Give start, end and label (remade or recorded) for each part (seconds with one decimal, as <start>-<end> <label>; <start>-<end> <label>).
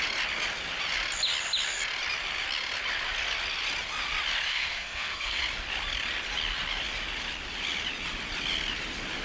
0.0-4.5 recorded; 4.5-5.4 remade; 5.4-9.2 recorded